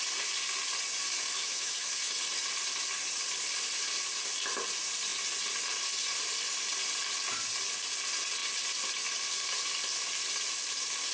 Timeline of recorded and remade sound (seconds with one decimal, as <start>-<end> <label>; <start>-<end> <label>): 0.0-1.4 recorded; 1.4-2.1 remade; 2.1-11.1 recorded